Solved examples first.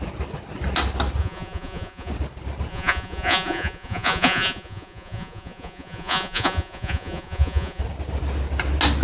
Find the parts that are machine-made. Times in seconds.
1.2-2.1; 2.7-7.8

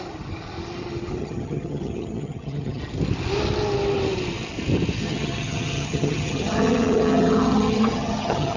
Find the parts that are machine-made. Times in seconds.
1.2-2.8; 5.0-8.6

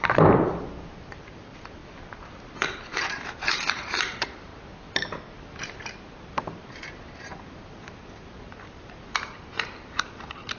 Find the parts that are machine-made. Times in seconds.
0.0-1.8; 3.0-4.5; 7.2-10.6

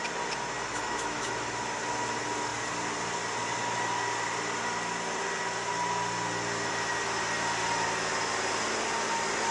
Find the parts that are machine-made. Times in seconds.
0.7-1.3